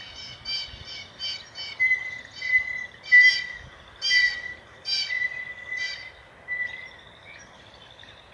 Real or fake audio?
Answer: real